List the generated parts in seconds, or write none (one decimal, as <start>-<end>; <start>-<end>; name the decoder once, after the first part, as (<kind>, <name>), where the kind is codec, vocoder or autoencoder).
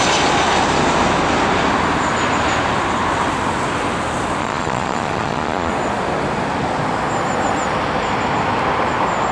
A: 4.4-5.7 (vocoder, Vocos)